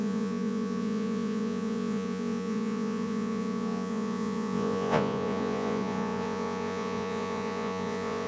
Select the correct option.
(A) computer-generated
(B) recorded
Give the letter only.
A